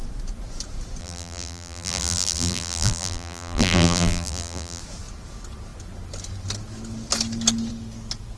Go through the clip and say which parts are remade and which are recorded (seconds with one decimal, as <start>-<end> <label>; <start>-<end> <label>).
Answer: 0.0-1.0 recorded; 1.0-4.8 remade; 4.8-8.4 recorded